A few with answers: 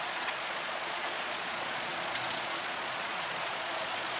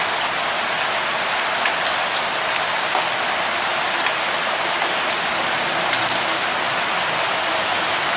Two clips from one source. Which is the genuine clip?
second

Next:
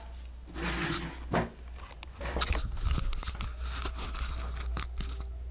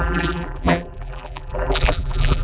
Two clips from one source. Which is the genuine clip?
first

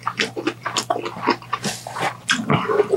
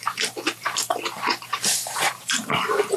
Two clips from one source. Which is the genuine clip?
first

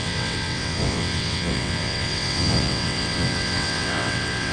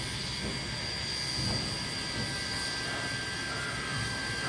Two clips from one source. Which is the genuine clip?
second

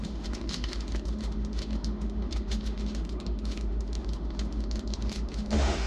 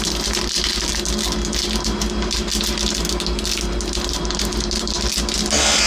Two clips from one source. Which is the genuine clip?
second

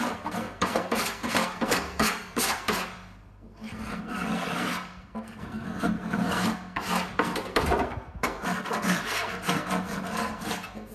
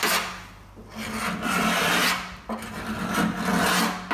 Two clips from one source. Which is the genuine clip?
second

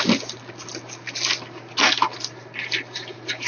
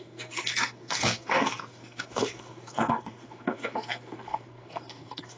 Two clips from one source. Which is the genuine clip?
first